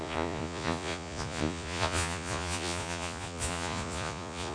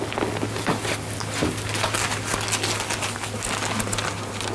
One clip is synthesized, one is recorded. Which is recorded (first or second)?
second